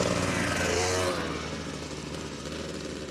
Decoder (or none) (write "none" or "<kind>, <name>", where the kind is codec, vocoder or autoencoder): none